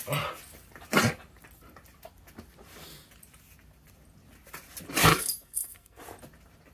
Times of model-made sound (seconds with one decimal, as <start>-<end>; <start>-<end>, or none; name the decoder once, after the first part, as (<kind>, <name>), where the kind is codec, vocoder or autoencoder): 5.1-6.0 (codec, SNAC)